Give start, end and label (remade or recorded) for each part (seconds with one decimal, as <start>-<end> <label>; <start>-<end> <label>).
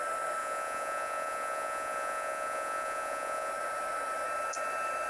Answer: 0.0-0.4 recorded; 0.4-3.5 remade; 3.5-5.1 recorded